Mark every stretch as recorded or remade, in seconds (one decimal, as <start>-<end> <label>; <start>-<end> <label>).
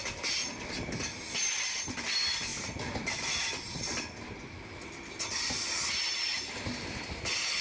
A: 0.0-7.6 recorded